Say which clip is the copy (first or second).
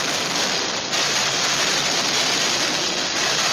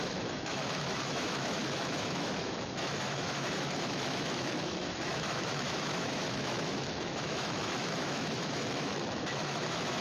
second